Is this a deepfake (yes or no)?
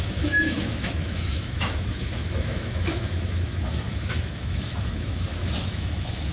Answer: yes